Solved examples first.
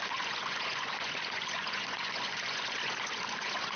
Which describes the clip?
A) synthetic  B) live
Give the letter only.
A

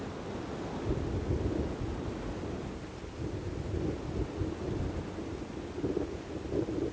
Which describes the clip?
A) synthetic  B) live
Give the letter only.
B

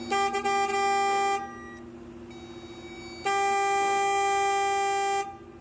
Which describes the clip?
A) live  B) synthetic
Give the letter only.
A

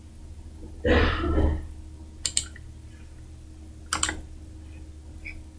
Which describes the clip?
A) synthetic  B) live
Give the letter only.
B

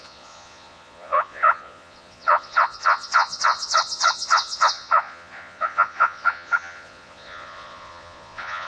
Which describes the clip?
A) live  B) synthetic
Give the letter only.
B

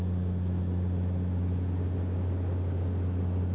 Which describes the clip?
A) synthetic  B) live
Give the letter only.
B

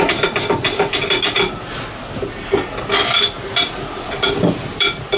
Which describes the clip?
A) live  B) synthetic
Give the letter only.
A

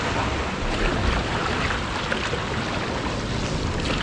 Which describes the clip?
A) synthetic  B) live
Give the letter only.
B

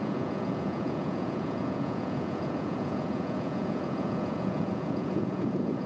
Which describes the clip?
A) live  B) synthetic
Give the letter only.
B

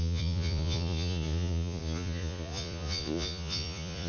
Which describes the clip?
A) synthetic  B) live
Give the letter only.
A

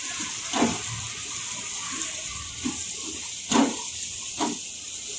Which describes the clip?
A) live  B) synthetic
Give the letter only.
A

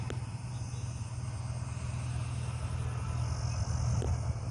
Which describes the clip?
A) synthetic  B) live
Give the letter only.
B